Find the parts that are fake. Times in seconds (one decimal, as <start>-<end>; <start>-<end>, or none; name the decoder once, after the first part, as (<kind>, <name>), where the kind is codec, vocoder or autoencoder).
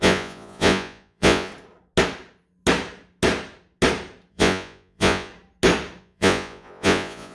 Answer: 0.0-1.5 (vocoder, Vocos); 4.3-5.3; 6.0-7.3